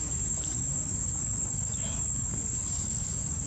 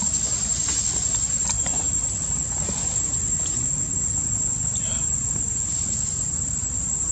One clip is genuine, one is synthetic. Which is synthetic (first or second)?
first